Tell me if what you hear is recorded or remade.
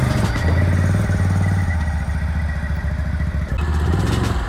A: recorded